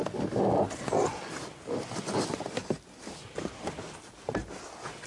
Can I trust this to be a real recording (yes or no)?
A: yes